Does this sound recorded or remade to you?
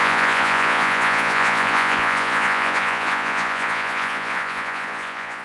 remade